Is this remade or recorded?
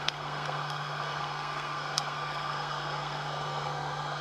remade